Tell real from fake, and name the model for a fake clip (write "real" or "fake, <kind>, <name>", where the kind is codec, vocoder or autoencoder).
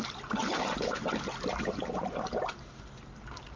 real